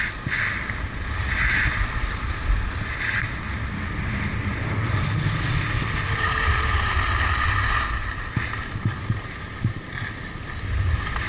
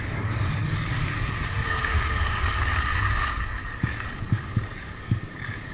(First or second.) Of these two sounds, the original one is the first